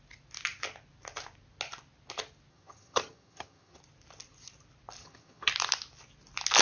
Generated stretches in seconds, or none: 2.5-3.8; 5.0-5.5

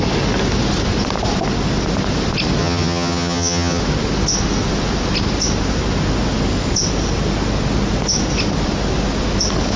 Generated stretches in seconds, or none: 2.6-3.8

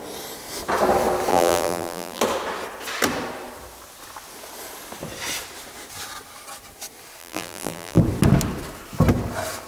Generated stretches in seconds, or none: 1.3-2.2; 7.2-8.0

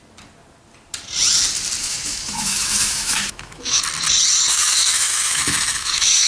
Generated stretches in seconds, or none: 1.8-3.8; 4.5-6.3

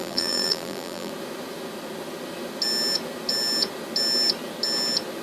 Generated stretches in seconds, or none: 0.0-1.1